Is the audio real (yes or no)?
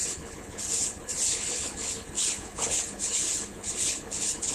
no